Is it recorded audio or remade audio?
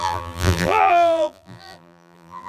remade